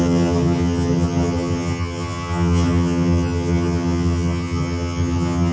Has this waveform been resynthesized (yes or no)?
yes